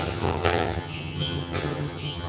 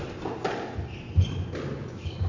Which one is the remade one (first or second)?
first